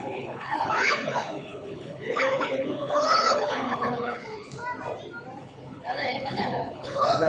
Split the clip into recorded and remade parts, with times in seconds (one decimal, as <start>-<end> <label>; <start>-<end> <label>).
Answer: 0.0-4.6 remade; 4.6-5.4 recorded; 5.4-7.3 remade